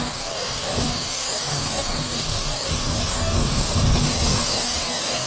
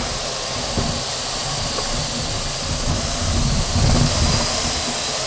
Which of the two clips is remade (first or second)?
first